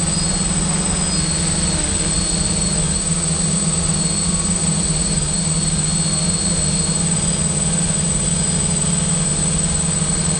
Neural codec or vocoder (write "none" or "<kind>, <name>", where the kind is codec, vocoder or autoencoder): none